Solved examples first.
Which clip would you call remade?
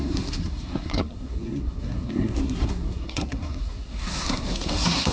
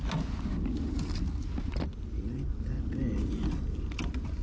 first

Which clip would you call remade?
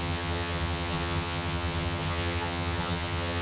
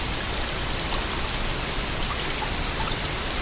first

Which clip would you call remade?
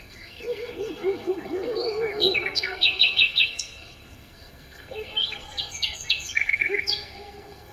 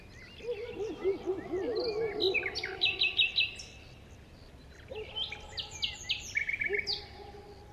first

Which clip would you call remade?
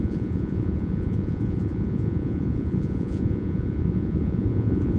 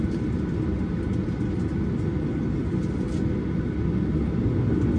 first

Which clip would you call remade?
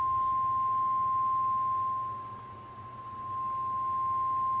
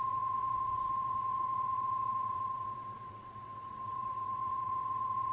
second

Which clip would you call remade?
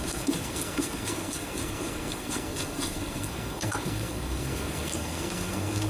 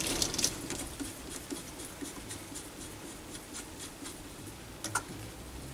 first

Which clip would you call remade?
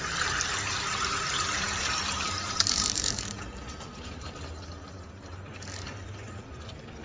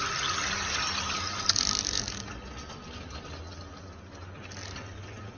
first